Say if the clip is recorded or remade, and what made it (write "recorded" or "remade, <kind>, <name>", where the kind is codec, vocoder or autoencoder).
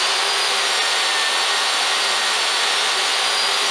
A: recorded